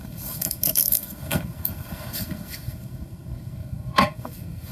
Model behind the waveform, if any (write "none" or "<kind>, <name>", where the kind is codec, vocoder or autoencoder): codec, SNAC